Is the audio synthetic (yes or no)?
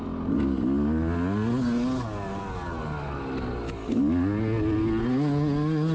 no